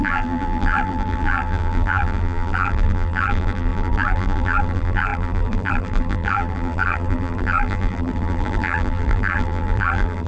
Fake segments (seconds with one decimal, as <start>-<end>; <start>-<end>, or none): 0.0-10.3